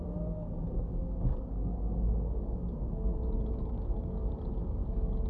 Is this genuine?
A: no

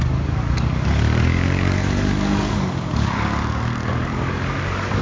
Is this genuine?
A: no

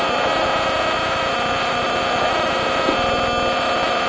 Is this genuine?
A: yes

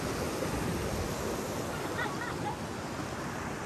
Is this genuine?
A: yes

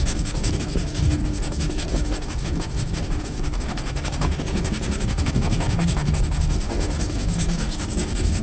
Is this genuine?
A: no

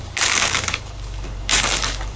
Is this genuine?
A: no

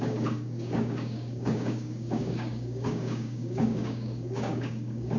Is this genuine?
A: no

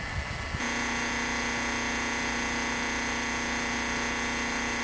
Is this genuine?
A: yes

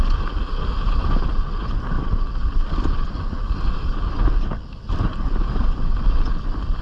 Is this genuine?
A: yes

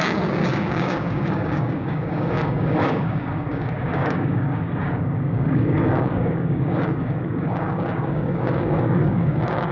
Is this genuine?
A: no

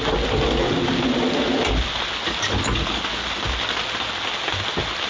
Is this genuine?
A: yes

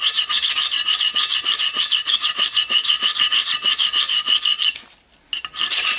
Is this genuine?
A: yes